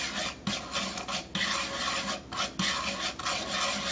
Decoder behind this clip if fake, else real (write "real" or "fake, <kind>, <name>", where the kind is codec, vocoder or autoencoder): real